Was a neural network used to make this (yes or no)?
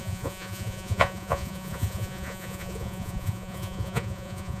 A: yes